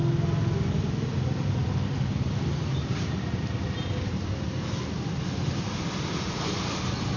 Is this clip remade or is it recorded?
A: recorded